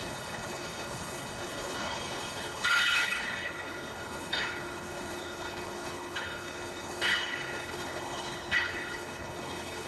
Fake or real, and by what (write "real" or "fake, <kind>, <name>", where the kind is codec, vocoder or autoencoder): fake, codec, HILCodec